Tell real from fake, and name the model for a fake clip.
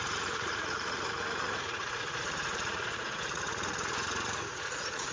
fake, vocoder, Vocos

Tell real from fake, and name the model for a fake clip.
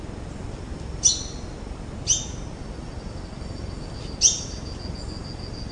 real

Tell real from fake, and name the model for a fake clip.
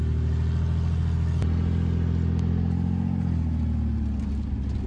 real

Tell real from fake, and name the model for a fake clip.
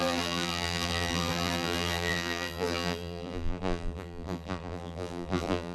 fake, vocoder, BigVGAN v2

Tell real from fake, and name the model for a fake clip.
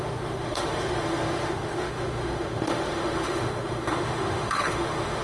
fake, autoencoder, DAC-VAE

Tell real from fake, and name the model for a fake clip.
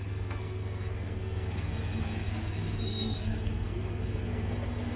fake, codec, SNAC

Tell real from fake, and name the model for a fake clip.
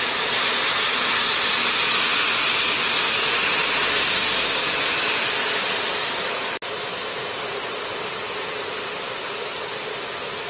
real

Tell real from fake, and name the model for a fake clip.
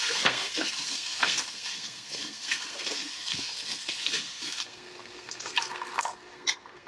fake, codec, SNAC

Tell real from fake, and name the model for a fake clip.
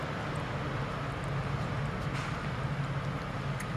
real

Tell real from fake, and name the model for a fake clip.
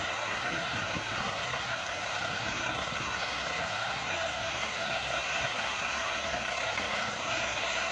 fake, codec, SNAC